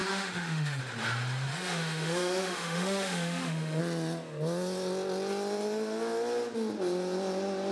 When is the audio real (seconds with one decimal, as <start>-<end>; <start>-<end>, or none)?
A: 0.8-1.5; 3.8-7.7